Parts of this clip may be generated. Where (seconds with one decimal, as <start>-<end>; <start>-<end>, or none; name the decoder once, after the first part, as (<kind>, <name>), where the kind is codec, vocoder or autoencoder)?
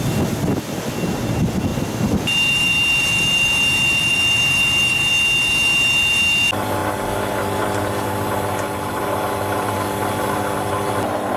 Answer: 1.7-5.1 (vocoder, BigVGAN v2)